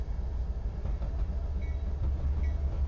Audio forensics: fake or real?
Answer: real